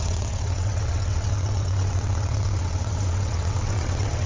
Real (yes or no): no